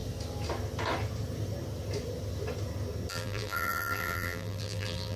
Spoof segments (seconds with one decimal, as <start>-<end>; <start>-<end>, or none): 3.1-5.2